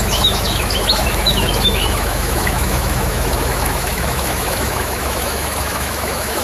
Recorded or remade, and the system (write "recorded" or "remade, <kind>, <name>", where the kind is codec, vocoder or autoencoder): remade, autoencoder, DAC-VAE